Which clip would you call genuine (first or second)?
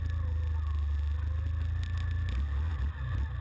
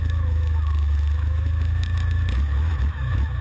first